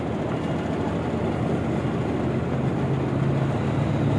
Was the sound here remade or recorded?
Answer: recorded